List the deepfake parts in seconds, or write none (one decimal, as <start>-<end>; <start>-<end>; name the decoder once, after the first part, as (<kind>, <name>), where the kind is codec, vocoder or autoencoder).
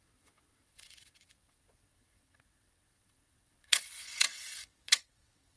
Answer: 0.0-5.6 (vocoder, WaveNeXt)